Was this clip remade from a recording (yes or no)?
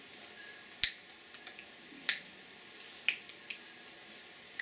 no